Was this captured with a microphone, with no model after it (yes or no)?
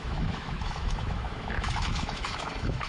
no